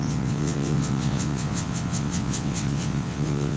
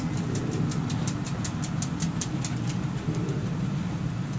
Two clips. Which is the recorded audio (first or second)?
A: second